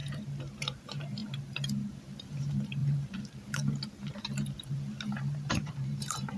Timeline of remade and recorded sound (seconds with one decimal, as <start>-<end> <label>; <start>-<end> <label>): 0.0-6.4 remade